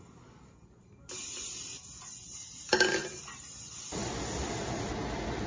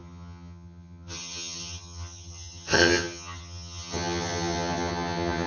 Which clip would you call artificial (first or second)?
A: second